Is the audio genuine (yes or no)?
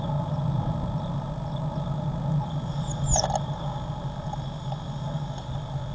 yes